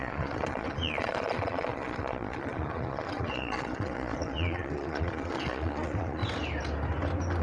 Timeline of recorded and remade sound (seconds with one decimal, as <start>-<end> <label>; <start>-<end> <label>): 0.0-6.2 remade; 6.2-7.4 recorded